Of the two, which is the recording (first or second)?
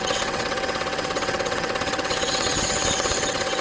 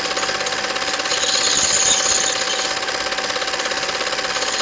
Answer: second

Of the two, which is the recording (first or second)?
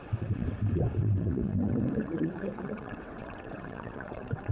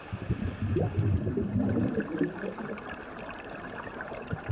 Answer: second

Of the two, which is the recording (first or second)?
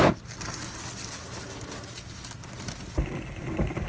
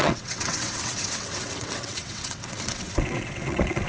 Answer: first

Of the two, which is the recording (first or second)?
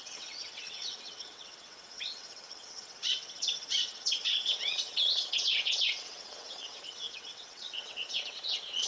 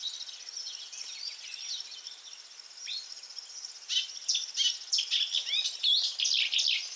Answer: second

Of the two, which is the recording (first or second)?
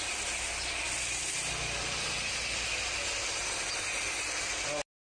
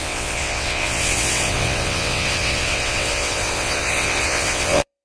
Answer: first